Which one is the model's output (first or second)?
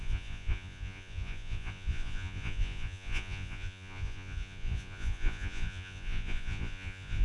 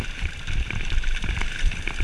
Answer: first